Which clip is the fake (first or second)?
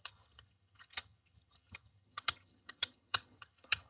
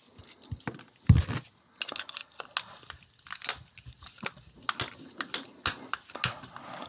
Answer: first